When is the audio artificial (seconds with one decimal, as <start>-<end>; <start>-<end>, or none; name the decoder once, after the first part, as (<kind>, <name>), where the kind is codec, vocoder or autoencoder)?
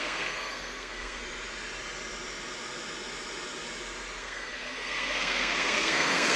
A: 0.0-1.2 (codec, SNAC); 4.2-6.4